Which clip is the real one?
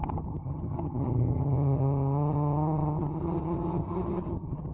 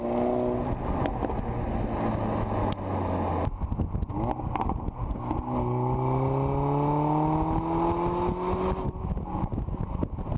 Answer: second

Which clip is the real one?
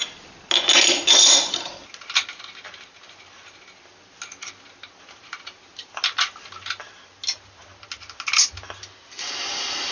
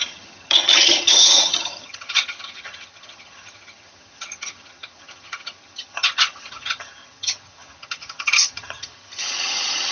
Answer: first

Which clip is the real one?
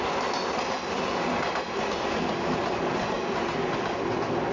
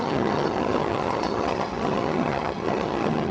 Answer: first